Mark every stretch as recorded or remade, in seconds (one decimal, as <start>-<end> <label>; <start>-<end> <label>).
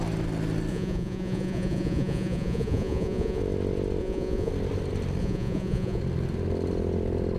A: 0.0-0.7 recorded; 0.7-3.4 remade; 3.4-4.0 recorded; 4.0-4.5 remade; 4.5-5.2 recorded; 5.2-6.0 remade; 6.0-7.4 recorded